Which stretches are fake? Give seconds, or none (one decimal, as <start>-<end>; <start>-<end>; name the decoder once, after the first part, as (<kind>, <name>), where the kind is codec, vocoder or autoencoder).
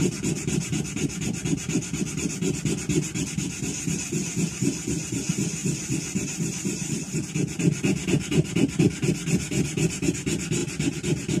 5.6-8.8 (vocoder, BigVGAN v2); 10.6-11.4